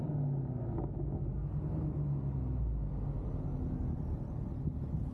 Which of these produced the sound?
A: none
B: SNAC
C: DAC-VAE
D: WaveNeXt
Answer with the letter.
A